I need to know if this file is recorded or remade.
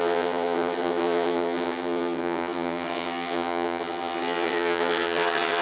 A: remade